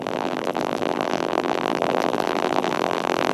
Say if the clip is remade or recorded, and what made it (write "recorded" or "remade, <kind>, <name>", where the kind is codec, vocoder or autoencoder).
remade, vocoder, BigVGAN v2